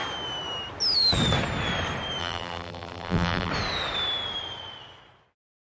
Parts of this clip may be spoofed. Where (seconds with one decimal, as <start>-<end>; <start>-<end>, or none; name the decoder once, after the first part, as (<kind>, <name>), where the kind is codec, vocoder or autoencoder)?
2.2-3.5 (vocoder, BigVGAN v2)